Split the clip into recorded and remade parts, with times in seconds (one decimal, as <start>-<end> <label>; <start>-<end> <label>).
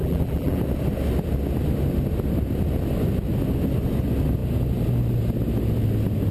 0.0-0.6 remade; 0.6-6.3 recorded